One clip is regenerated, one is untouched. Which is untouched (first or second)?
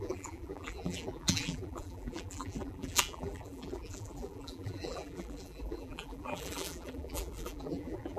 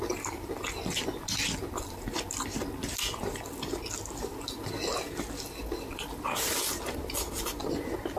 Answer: second